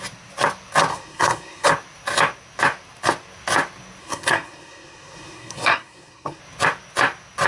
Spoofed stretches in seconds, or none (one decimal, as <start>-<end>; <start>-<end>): 0.9-1.7; 4.0-6.4